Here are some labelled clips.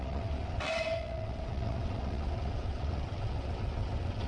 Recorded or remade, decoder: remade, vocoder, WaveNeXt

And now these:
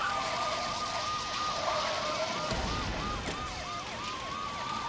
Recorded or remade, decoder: recorded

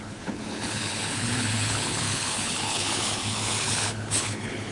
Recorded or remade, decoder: remade, codec, HILCodec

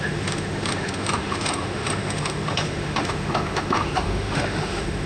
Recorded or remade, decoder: remade, autoencoder, DAC-VAE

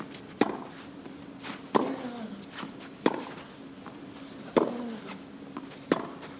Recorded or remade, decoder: recorded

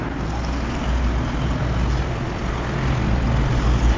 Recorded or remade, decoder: recorded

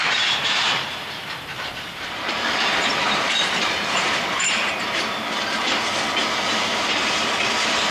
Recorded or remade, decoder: remade, vocoder, BigVGAN v2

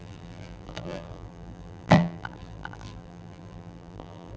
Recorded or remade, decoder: remade, vocoder, BigVGAN v2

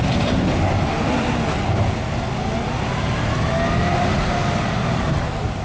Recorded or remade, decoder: recorded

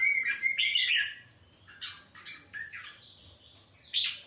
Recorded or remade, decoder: recorded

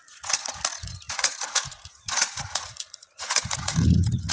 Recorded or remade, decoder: remade, vocoder, Vocos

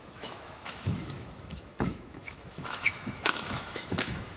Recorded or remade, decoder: remade, autoencoder, DAC-VAE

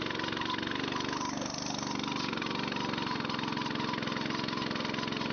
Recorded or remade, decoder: recorded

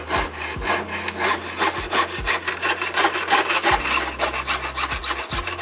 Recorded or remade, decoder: recorded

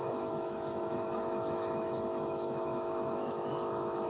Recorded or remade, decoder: remade, autoencoder, DAC-VAE